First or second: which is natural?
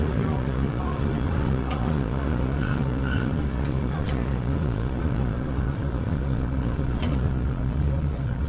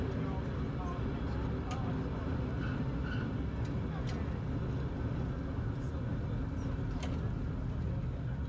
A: second